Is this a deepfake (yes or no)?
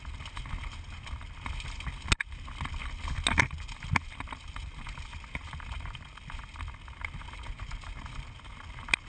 no